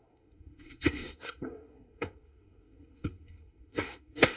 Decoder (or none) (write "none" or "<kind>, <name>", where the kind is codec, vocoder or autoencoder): codec, SNAC